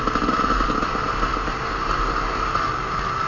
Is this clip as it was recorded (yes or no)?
yes